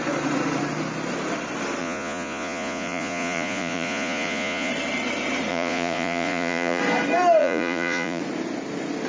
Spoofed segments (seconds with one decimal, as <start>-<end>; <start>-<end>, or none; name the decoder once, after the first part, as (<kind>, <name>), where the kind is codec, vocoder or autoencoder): 1.8-4.7 (vocoder, Vocos); 5.5-6.8; 7.4-8.2